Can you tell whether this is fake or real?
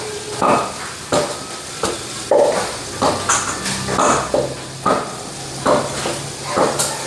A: real